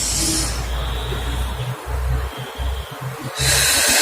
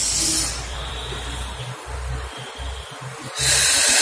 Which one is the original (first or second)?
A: first